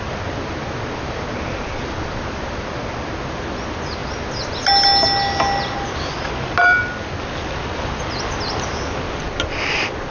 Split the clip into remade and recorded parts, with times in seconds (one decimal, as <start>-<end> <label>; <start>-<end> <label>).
0.0-10.1 recorded